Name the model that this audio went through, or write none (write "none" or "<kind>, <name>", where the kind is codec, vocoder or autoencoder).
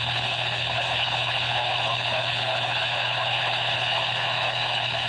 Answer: codec, HILCodec